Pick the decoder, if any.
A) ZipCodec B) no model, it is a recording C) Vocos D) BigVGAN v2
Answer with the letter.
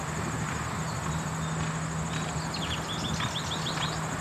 B